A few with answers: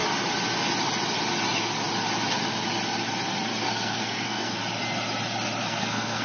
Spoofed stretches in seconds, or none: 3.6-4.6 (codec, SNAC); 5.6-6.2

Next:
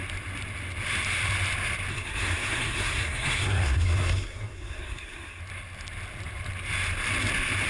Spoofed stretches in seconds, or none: 1.9-5.4 (codec, SNAC)

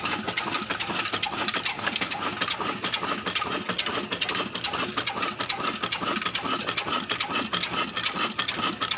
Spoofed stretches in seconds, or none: 1.7-2.2 (codec, SNAC)

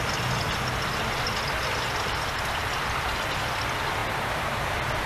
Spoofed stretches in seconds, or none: none

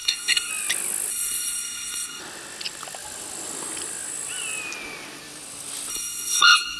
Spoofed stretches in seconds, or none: 0.0-0.5 (codec, SNAC); 1.1-2.2; 5.9-6.8